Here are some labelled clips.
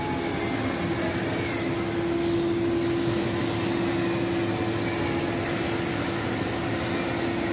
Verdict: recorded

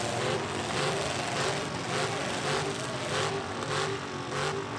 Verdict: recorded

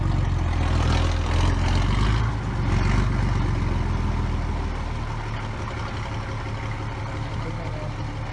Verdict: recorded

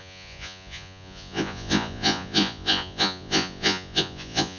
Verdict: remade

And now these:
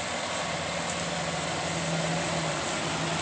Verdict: recorded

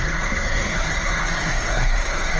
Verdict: remade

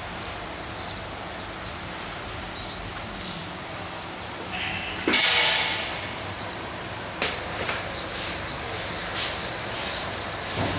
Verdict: recorded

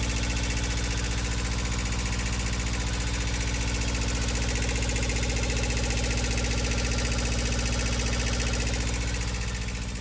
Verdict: recorded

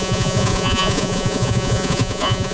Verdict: remade